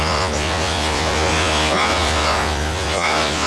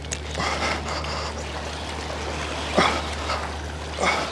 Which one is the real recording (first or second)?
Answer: second